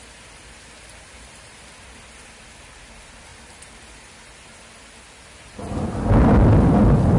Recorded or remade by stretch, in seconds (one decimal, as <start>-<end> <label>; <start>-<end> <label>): 0.0-7.2 recorded

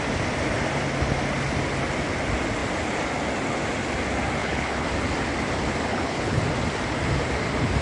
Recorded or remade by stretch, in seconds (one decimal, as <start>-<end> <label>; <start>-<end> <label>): 0.0-4.4 recorded; 4.4-4.9 remade; 4.9-5.9 recorded; 5.9-6.4 remade; 6.4-7.8 recorded